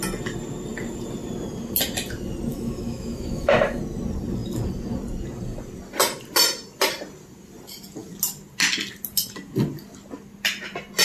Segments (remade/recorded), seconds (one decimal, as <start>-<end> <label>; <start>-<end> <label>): 0.0-2.5 recorded; 2.5-3.8 remade; 3.8-11.0 recorded